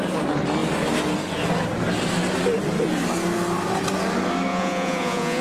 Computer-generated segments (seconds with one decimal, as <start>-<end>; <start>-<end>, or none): 4.5-5.4